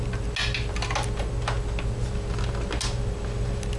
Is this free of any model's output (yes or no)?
yes